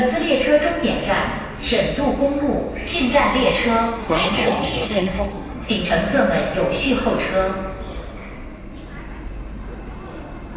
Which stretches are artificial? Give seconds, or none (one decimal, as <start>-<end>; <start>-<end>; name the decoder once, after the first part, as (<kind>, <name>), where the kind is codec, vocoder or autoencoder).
4.0-5.7 (codec, SNAC)